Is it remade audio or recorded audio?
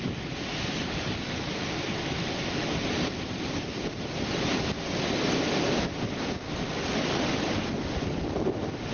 recorded